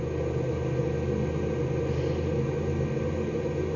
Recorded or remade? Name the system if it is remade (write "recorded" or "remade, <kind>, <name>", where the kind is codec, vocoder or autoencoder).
recorded